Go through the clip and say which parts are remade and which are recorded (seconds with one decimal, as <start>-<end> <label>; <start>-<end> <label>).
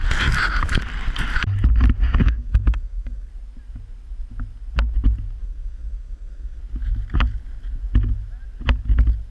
0.0-2.2 recorded; 2.2-3.3 remade; 3.3-5.4 recorded; 5.4-6.6 remade; 6.6-9.3 recorded